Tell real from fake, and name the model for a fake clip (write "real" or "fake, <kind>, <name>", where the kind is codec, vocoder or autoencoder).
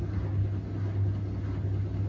real